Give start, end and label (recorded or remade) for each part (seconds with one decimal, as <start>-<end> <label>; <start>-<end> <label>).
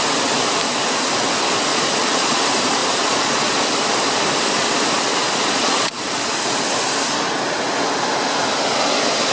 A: 0.0-1.7 recorded; 1.7-2.4 remade; 2.4-2.8 recorded; 2.8-3.6 remade; 3.6-5.2 recorded; 5.2-6.0 remade; 6.0-9.3 recorded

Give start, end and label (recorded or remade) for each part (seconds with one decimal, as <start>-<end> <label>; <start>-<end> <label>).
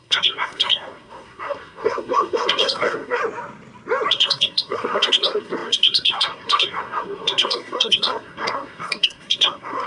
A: 0.0-3.2 remade; 3.2-4.1 recorded; 4.1-9.9 remade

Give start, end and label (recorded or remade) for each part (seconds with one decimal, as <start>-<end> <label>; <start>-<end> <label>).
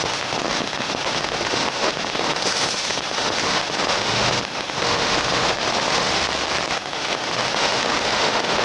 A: 0.0-6.1 remade; 6.1-6.7 recorded; 6.7-8.6 remade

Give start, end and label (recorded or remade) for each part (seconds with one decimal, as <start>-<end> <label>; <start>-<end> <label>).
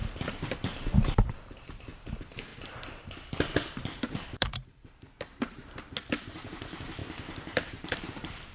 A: 0.0-2.5 remade; 2.5-4.0 recorded; 4.0-5.6 remade; 5.6-6.3 recorded; 6.3-7.0 remade; 7.0-7.7 recorded; 7.7-8.5 remade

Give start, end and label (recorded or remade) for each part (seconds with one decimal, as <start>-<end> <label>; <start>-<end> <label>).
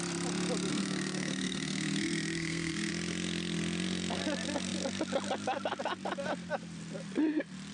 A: 0.0-0.7 recorded; 0.7-2.9 remade; 2.9-7.7 recorded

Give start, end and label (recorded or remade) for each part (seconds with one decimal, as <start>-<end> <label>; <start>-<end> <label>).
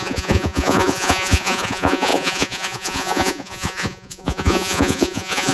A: 0.0-5.5 remade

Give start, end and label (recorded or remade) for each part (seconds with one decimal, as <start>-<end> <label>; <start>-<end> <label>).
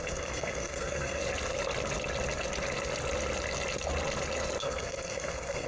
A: 0.0-1.2 remade; 1.2-4.6 recorded; 4.6-5.7 remade